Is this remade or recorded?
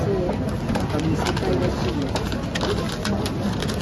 recorded